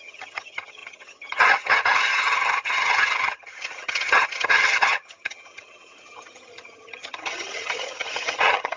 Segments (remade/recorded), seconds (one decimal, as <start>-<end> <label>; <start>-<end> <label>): 0.0-8.8 remade